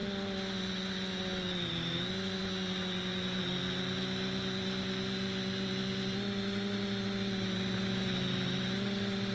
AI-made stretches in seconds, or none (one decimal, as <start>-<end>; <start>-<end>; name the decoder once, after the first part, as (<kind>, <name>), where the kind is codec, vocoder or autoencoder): none